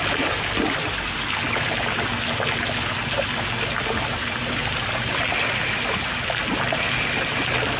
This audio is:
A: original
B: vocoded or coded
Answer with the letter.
A